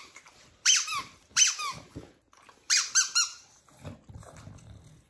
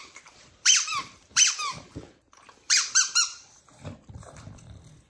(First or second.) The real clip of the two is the first